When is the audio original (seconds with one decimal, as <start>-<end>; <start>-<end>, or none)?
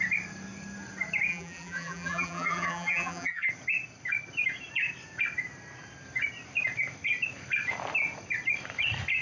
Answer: 0.0-1.3; 3.5-9.2